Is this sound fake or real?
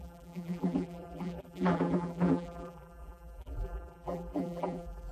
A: fake